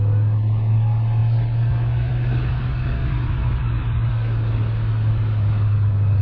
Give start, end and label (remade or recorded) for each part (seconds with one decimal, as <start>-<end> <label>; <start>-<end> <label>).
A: 0.0-6.2 remade

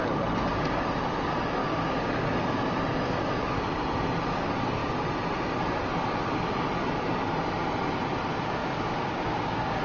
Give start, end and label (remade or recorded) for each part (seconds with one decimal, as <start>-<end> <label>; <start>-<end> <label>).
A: 0.0-1.6 recorded; 1.6-2.1 remade; 2.1-8.6 recorded; 8.6-9.8 remade